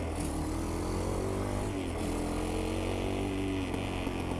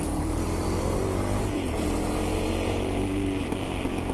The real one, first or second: first